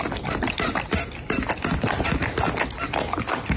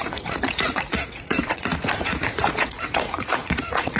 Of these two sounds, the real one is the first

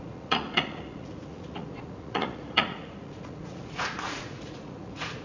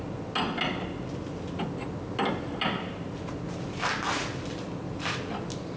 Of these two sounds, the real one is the second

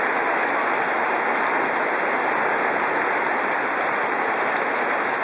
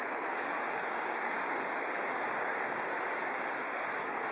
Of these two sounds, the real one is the first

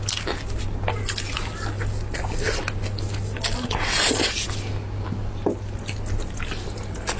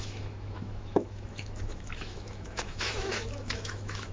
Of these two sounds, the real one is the first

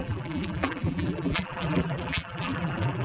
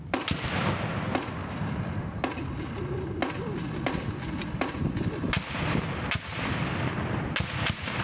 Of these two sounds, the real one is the second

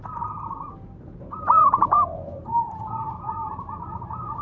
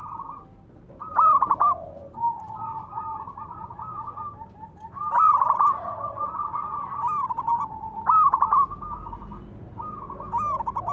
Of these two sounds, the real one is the second